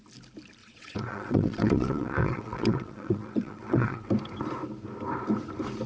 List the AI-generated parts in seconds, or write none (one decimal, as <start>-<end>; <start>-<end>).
0.6-4.1